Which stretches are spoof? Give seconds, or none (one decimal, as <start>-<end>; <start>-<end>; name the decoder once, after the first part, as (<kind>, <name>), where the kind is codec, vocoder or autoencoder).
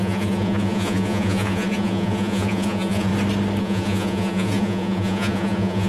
0.0-3.1 (vocoder, Vocos); 3.6-5.9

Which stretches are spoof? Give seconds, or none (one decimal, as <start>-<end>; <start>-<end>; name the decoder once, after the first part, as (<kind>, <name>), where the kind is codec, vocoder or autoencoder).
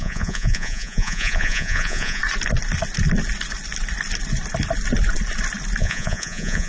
0.0-2.2 (vocoder, Vocos); 5.8-6.7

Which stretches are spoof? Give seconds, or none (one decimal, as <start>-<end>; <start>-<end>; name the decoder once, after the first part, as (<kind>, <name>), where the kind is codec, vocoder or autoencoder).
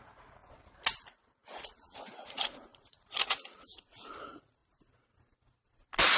0.0-0.4 (vocoder, Vocos); 1.0-4.6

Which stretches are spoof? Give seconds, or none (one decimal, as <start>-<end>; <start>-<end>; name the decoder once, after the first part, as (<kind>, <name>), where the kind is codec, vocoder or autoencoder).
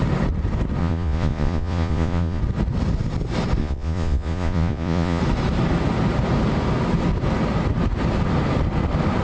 0.8-2.4 (vocoder, Vocos); 3.6-5.2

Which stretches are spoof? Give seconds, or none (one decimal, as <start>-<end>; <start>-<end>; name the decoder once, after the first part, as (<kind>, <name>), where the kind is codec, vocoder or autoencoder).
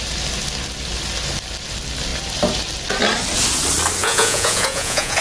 4.0-5.2 (vocoder, Vocos)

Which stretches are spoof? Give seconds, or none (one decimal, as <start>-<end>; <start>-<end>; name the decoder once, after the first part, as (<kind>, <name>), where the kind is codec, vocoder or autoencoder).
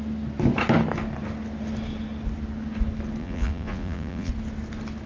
3.2-4.3 (vocoder, Vocos)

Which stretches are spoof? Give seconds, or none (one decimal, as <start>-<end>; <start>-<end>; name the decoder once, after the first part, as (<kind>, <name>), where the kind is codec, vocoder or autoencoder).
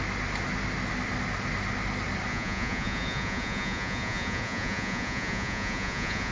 2.3-6.3 (vocoder, Vocos)